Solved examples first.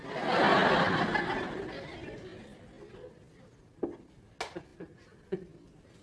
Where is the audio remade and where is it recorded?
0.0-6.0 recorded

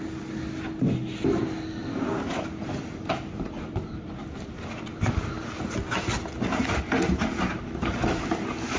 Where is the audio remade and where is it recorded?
0.0-8.8 recorded

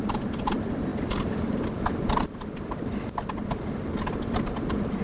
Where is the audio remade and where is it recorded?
0.0-5.0 recorded

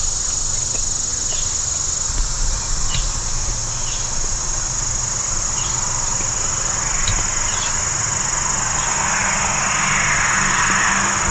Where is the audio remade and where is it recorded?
0.0-11.3 recorded

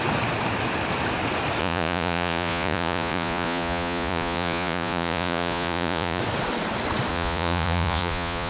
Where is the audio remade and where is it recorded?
0.0-1.6 recorded; 1.6-6.2 remade; 6.2-7.1 recorded; 7.1-8.5 remade

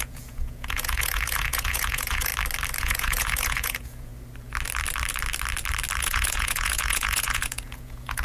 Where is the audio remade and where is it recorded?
0.0-2.3 remade; 2.3-2.8 recorded; 2.8-4.1 remade; 4.1-6.0 recorded; 6.0-8.2 remade

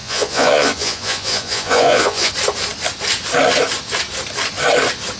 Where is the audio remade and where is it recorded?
0.0-2.3 remade; 2.3-5.2 recorded